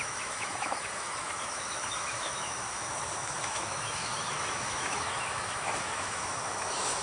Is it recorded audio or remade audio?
remade